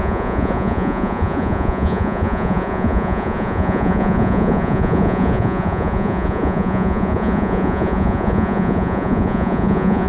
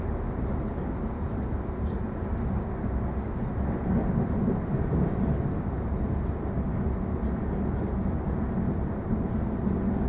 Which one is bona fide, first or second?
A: second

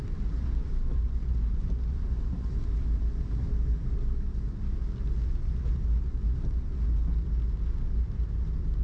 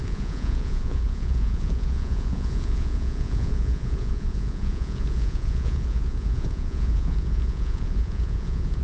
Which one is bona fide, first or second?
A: first